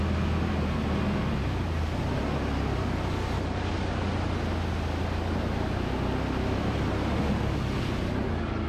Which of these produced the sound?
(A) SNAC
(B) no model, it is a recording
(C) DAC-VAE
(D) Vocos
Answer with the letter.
B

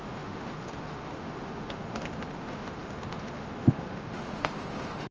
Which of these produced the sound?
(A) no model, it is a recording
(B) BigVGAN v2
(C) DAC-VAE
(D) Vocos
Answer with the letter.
C